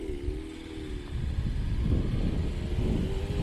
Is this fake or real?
real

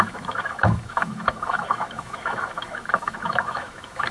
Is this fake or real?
fake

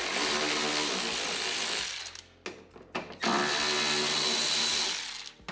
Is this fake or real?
real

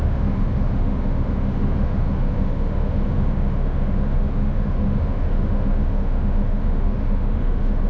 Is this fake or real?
fake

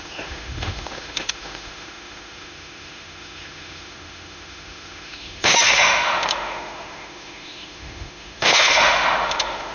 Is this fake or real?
fake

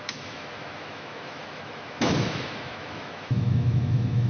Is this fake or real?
fake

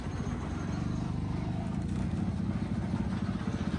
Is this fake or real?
real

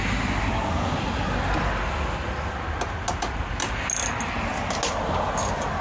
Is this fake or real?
real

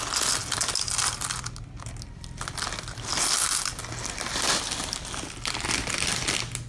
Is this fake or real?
real